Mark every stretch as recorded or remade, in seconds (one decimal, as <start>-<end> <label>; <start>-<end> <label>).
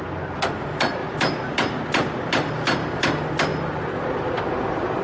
0.0-1.0 recorded; 1.0-2.6 remade; 2.6-5.0 recorded